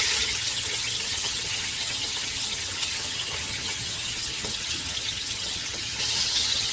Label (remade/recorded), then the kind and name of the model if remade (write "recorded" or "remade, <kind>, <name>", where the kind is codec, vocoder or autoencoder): remade, vocoder, HiFi-GAN